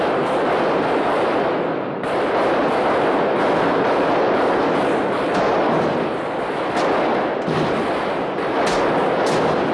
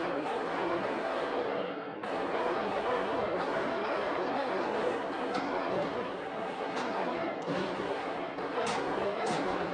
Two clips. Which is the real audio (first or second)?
first